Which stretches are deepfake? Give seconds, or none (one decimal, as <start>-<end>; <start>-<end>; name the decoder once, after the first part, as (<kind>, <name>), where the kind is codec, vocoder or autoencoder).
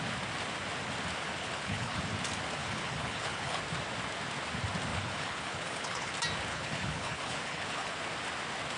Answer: 1.4-2.0 (codec, HILCodec); 2.6-3.6; 4.9-6.1; 6.5-8.0